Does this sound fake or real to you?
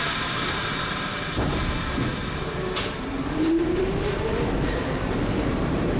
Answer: fake